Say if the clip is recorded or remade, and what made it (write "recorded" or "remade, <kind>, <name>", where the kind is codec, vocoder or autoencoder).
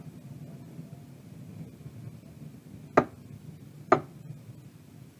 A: recorded